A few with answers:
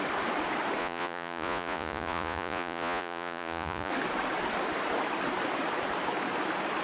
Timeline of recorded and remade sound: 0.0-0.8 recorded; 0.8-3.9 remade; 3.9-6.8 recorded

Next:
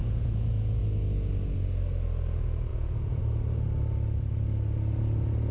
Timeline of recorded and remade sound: 0.0-0.8 remade; 0.8-2.7 recorded; 2.7-3.2 remade; 3.2-5.5 recorded

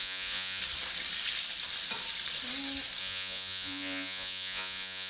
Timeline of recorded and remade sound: 0.0-0.6 remade; 0.6-3.0 recorded; 3.0-5.1 remade

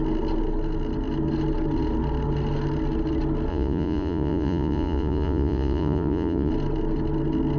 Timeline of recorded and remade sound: 0.0-3.5 recorded; 3.5-6.5 remade; 6.5-7.6 recorded